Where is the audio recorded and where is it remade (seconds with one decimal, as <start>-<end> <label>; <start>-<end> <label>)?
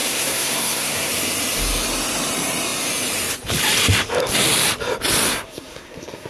0.0-1.1 remade; 1.1-5.3 recorded; 5.3-6.3 remade